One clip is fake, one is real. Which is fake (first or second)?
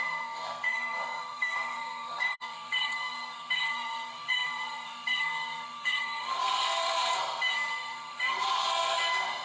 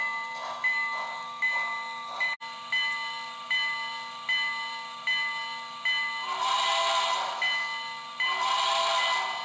first